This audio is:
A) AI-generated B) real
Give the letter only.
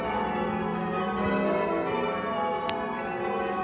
B